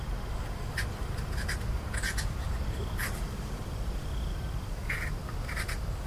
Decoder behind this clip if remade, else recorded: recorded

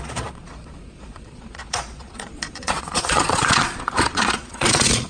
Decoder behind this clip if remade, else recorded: remade, vocoder, Vocos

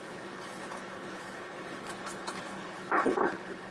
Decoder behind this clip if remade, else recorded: remade, codec, HILCodec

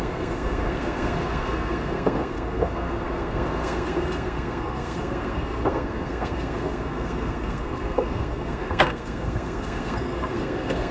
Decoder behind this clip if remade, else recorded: remade, codec, SNAC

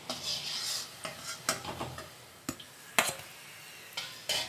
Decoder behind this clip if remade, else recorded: recorded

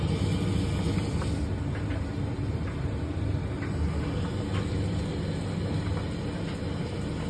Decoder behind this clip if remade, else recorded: recorded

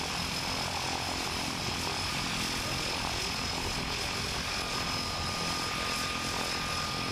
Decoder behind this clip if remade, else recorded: recorded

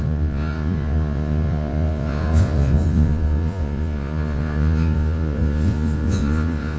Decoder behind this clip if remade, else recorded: remade, vocoder, Vocos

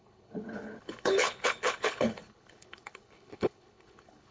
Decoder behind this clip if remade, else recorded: remade, codec, HILCodec